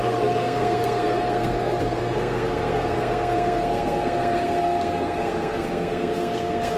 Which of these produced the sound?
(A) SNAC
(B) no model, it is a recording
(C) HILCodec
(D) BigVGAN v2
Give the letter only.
A